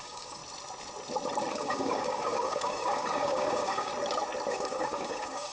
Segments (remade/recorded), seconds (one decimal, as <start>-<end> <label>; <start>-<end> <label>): 0.0-0.4 remade; 0.4-1.5 recorded; 1.5-3.9 remade; 3.9-4.5 recorded; 4.5-5.5 remade